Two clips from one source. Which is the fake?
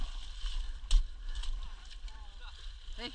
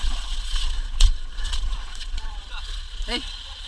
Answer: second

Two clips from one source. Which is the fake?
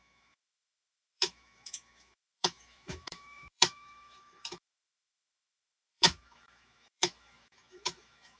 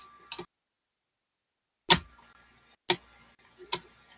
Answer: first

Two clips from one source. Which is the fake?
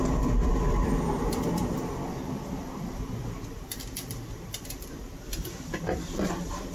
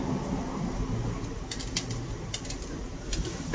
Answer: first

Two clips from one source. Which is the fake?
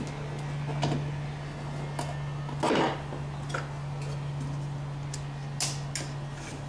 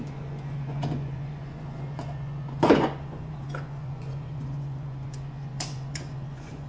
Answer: second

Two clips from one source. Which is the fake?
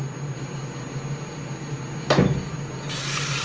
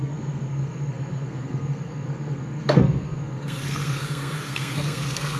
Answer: second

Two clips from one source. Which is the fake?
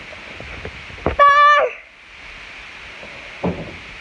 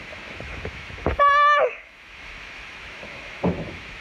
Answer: second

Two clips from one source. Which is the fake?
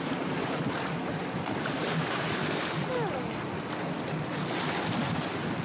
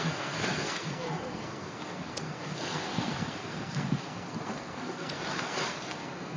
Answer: second